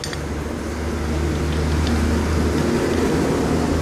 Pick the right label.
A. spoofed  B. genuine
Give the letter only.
B